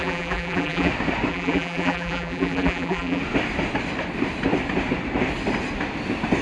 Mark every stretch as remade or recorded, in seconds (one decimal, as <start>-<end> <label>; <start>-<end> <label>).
0.0-0.9 remade; 0.9-1.3 recorded; 1.3-3.2 remade; 3.2-6.4 recorded